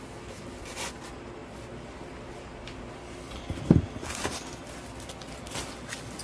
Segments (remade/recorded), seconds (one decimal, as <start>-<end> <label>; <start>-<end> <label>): 0.0-6.2 recorded